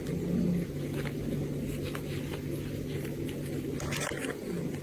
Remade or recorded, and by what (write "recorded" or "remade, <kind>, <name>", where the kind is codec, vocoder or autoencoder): recorded